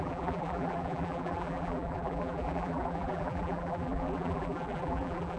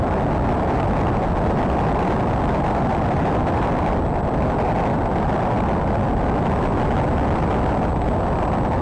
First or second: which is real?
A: second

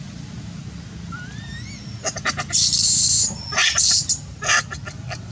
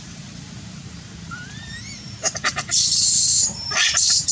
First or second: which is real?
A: first